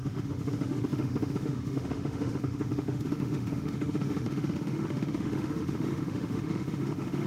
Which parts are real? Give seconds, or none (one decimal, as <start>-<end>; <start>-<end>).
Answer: none